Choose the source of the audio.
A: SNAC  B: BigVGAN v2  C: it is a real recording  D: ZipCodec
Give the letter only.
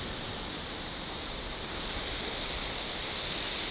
C